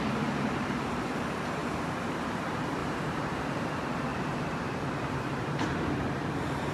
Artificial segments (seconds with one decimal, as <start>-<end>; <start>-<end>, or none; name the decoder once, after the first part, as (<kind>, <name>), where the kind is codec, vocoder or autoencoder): 0.0-1.6 (vocoder, BigVGAN v2); 2.1-6.7